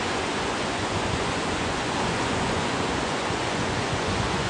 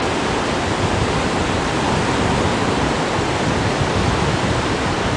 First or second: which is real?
second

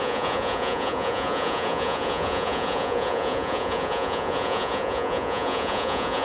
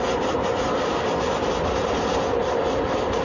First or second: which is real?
second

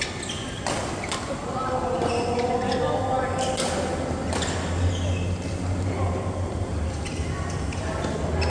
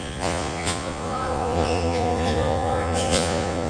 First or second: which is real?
first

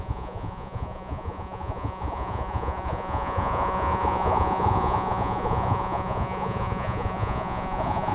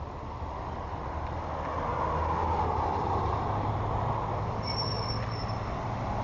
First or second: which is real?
second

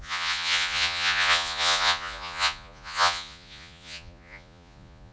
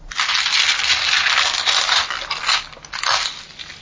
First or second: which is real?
second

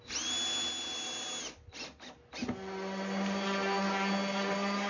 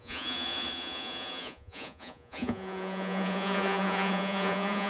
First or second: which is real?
first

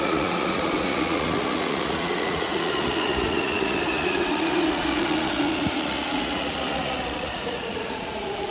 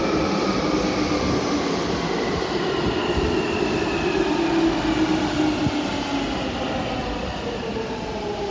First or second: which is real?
second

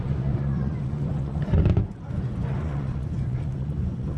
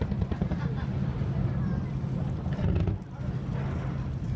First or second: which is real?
second